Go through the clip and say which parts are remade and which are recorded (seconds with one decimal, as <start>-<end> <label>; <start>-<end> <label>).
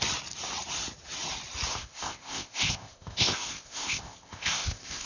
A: 0.0-1.7 recorded; 1.7-5.1 remade